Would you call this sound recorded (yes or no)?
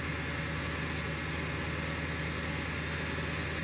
yes